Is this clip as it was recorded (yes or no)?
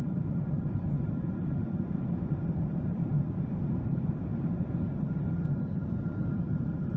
no